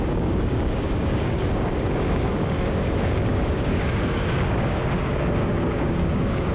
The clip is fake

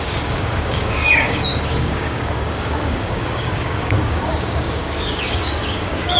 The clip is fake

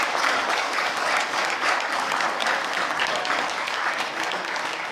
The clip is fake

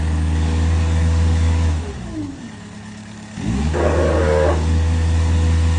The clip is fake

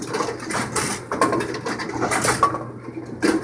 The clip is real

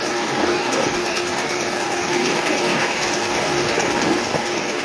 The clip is fake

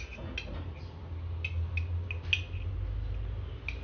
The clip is real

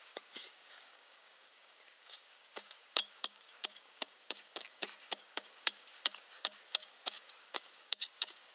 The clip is fake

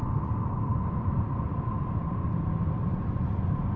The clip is real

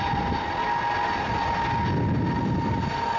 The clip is real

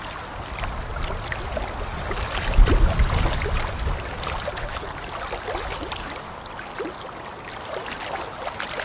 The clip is real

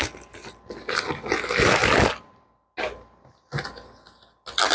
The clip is real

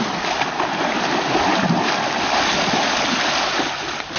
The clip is real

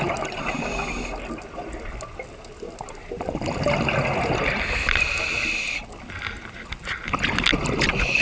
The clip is real